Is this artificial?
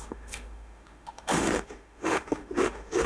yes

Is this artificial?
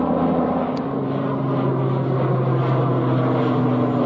no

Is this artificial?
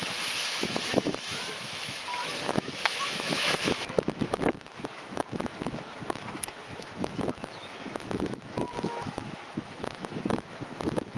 yes